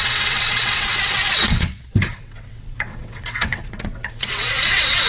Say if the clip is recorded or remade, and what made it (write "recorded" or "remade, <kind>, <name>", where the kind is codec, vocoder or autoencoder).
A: remade, vocoder, WaveNeXt